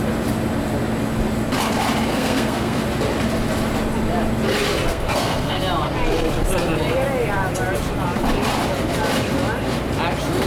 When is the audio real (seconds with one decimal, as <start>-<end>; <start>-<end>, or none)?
0.0-2.1; 2.8-4.9; 5.6-10.5